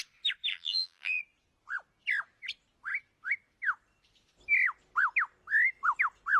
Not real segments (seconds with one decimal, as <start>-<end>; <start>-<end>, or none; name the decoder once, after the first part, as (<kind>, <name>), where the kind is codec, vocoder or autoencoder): 0.5-1.2 (vocoder, BigVGAN v2)